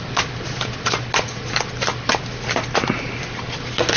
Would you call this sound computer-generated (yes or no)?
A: no